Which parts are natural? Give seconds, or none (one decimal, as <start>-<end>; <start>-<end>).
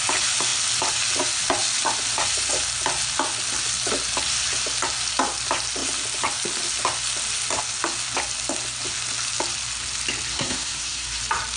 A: 0.0-10.3; 11.2-11.6